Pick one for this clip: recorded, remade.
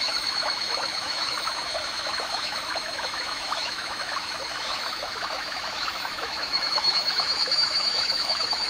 remade